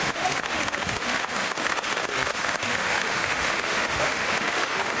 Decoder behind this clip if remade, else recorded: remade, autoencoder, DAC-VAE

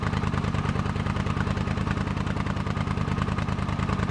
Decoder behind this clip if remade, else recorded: recorded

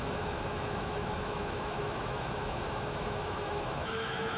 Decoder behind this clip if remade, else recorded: remade, autoencoder, DAC-VAE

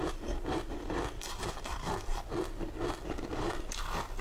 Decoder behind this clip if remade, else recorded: recorded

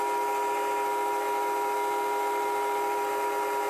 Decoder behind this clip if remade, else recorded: recorded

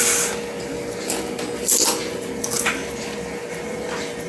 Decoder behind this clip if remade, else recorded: recorded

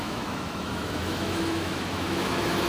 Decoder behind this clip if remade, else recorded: remade, autoencoder, DAC-VAE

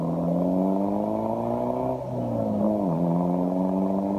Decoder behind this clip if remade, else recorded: recorded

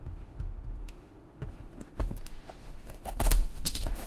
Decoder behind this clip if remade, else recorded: remade, autoencoder, DAC-VAE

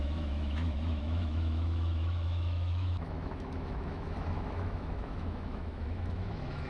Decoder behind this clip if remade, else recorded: remade, autoencoder, DAC-VAE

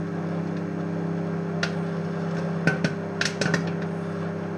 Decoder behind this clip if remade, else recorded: recorded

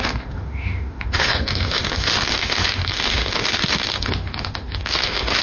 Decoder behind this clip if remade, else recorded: remade, autoencoder, DAC-VAE